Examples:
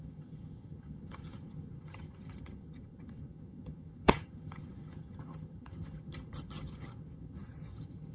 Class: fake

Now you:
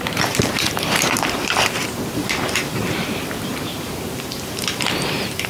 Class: fake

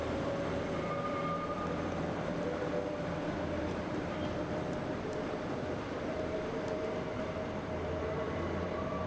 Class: fake